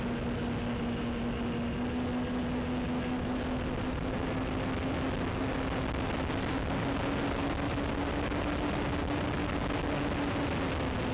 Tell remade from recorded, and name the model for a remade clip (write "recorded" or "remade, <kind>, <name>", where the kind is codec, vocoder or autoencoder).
recorded